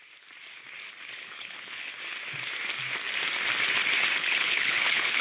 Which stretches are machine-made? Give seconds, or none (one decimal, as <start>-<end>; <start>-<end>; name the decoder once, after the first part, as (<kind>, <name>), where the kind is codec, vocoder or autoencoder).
1.2-1.9 (codec, HILCodec); 4.2-5.2